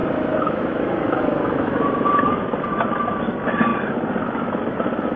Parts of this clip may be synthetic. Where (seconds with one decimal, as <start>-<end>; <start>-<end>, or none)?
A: 0.0-1.8